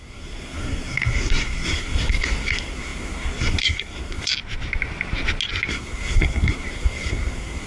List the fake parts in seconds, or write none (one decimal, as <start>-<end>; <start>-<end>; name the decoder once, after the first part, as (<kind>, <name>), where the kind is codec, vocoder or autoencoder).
0.0-4.3 (codec, SNAC); 5.7-7.7